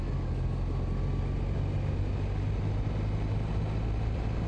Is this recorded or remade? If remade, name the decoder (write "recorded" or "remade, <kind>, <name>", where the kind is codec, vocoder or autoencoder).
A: recorded